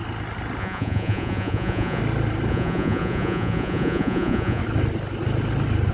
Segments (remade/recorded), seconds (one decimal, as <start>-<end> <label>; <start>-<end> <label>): 0.0-0.6 recorded; 0.6-2.0 remade; 2.0-2.5 recorded; 2.5-4.6 remade; 4.6-5.9 recorded